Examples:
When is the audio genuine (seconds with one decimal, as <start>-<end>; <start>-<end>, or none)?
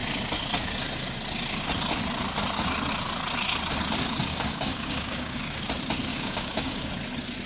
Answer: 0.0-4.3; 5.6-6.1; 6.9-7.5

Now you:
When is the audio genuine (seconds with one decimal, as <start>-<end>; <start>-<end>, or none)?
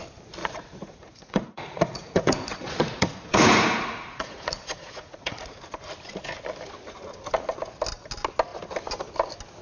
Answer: 0.0-0.4; 5.6-9.6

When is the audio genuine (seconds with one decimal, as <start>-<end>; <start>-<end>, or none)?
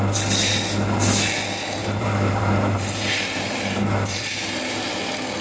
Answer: 0.0-1.8; 5.0-5.4